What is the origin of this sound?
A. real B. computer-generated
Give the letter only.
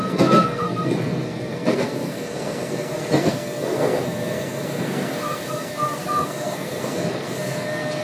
B